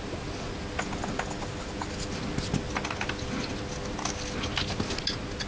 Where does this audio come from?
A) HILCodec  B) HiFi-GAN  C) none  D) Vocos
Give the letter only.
C